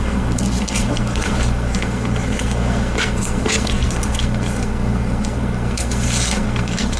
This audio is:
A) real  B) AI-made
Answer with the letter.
B